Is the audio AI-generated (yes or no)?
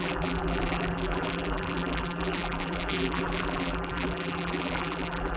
yes